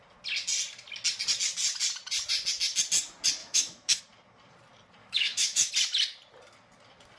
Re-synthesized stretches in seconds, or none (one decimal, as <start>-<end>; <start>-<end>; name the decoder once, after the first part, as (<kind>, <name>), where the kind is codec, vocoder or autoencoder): 3.4-4.0 (autoencoder, DAC-VAE); 5.0-5.7